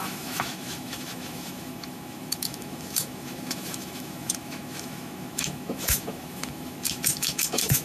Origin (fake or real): fake